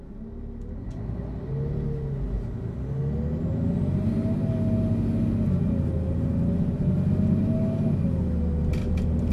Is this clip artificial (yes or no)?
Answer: no